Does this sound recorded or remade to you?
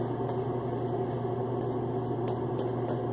recorded